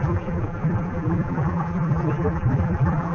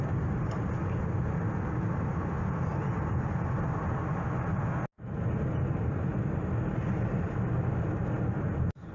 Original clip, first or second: second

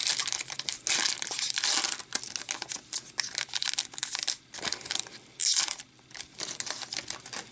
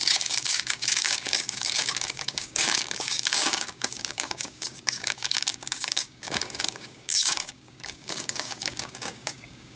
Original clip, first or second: first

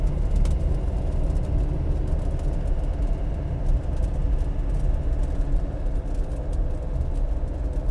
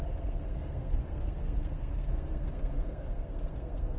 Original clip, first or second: first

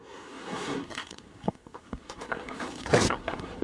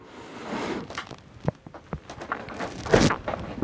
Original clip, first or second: second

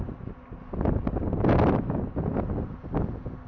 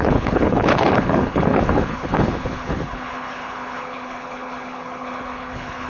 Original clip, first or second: first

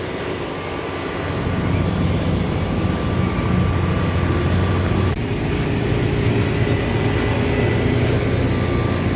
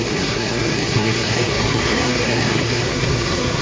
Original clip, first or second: first